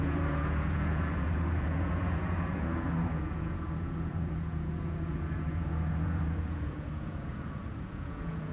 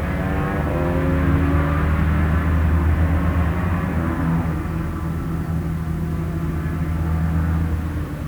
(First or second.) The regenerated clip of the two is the first